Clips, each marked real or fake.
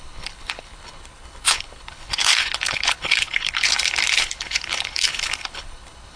fake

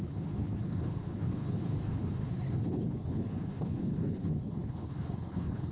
fake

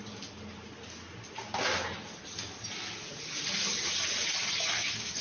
real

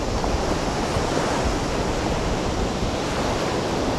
real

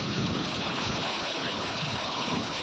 fake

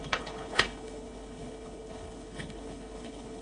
fake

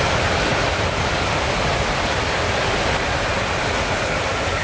real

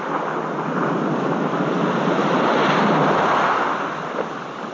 real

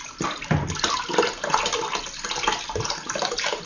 real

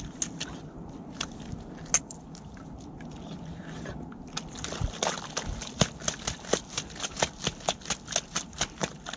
real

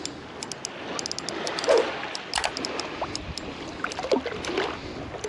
real